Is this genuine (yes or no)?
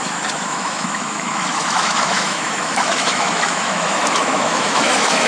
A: no